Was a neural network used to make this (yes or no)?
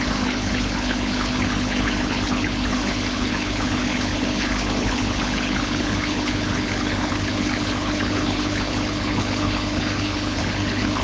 yes